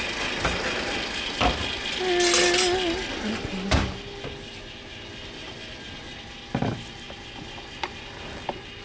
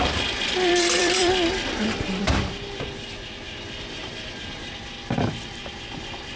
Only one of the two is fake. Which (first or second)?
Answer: second